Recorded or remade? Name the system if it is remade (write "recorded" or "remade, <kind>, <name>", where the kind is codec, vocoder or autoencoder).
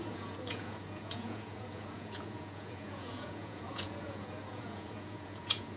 remade, vocoder, Vocos